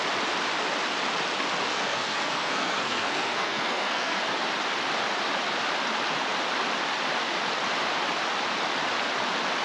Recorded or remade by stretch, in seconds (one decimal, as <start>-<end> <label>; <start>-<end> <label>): 0.0-1.7 recorded; 1.7-4.2 remade; 4.2-9.6 recorded